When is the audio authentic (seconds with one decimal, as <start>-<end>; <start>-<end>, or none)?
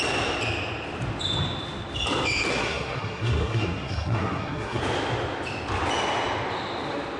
0.0-2.5; 4.8-7.2